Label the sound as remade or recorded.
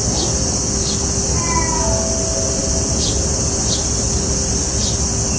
recorded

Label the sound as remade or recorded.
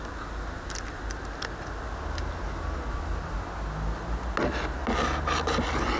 recorded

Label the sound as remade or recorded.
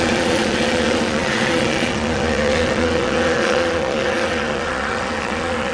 remade